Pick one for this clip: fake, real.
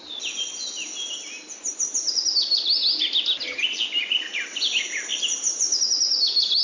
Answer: real